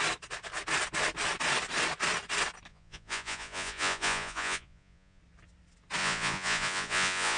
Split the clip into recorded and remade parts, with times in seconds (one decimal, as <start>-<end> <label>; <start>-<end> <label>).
0.0-2.7 recorded; 2.7-5.2 remade; 5.2-6.0 recorded; 6.0-7.4 remade